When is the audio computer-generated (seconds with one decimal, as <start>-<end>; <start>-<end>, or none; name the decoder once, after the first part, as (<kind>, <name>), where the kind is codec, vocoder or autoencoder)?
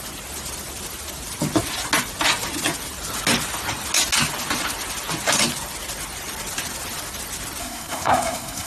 7.6-8.7 (codec, SNAC)